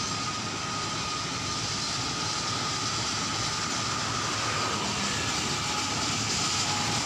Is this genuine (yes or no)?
yes